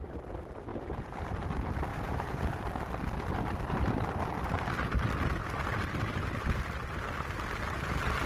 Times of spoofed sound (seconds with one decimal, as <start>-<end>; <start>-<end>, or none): 0.7-1.2; 1.9-2.5